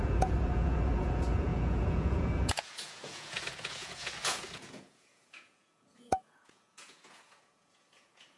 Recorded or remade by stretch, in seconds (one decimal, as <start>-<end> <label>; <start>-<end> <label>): 0.0-8.4 remade